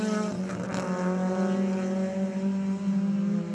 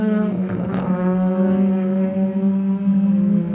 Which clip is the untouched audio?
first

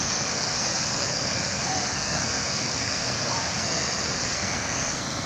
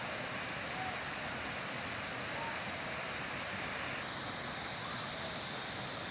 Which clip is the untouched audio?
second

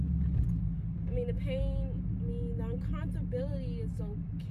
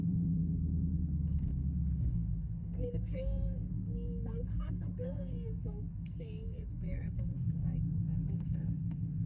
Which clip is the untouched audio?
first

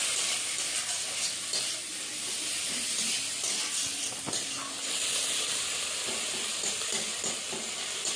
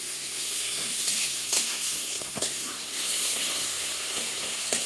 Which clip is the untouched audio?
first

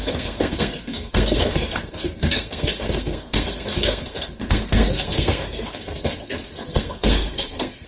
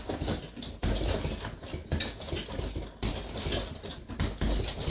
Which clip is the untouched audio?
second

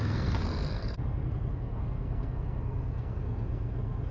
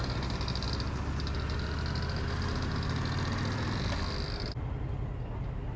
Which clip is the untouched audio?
second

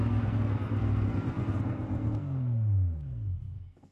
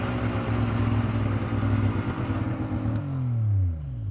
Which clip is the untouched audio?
second